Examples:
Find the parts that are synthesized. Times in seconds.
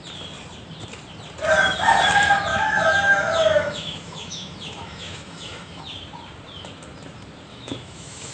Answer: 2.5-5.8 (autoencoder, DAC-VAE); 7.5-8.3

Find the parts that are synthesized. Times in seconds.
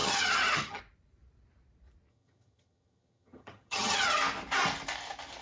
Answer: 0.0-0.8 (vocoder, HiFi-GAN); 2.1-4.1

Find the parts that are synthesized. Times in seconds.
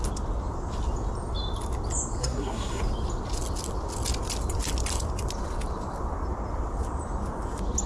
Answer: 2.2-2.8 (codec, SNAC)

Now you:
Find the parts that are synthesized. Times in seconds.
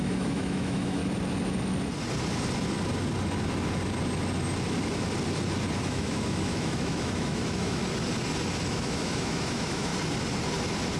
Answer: 0.0-1.0 (autoencoder, DAC-VAE); 5.8-7.8; 8.7-9.9